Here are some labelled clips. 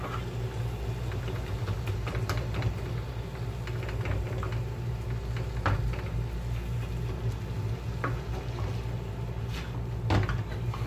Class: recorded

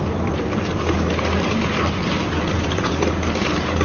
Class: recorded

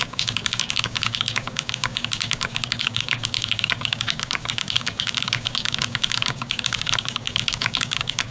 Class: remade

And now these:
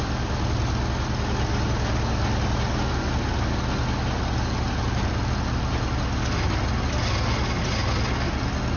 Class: recorded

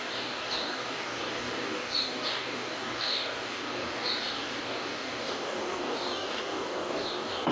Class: remade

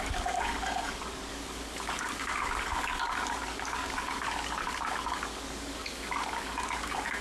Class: remade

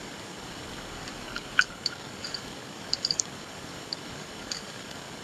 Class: remade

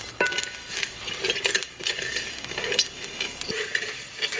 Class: recorded